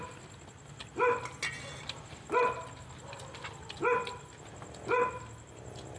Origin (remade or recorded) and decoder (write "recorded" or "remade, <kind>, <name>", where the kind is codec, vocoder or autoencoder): recorded